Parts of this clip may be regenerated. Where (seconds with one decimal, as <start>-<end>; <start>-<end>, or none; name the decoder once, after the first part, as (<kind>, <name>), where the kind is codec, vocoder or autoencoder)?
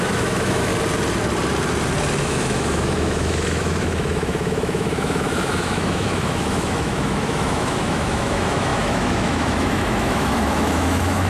0.0-0.7 (autoencoder, DAC-VAE); 2.2-11.3